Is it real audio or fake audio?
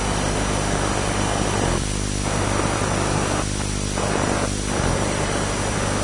real